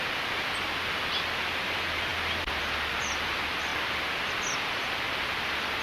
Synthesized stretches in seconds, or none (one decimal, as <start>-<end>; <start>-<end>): none